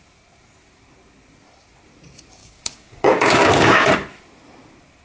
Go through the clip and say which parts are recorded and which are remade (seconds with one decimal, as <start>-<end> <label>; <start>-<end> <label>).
0.0-2.4 recorded; 2.4-3.9 remade; 3.9-5.0 recorded